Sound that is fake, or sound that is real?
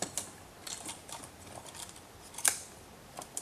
real